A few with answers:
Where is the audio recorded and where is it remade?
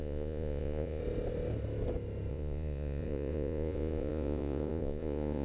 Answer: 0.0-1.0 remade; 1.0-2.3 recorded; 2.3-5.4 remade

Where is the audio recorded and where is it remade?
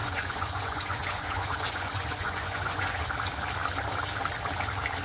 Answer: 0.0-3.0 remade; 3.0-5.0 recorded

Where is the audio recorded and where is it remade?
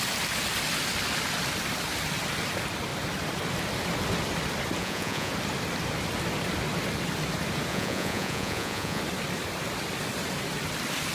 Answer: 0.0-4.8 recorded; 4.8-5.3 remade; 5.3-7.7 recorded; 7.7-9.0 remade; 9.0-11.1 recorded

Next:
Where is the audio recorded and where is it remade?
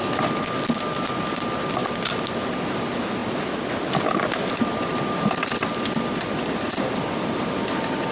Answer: 0.0-8.1 recorded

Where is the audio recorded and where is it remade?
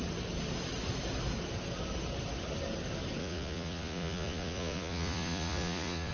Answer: 0.0-3.2 recorded; 3.2-6.1 remade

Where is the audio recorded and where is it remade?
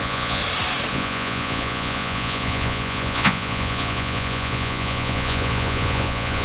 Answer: 0.0-0.4 remade; 0.4-0.9 recorded; 0.9-6.4 remade